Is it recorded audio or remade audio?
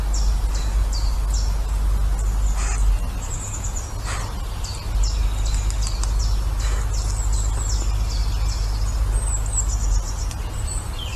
recorded